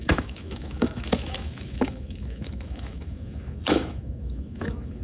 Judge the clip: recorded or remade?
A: remade